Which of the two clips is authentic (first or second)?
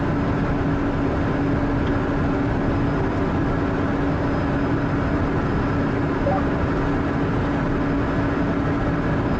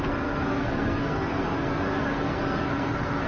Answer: first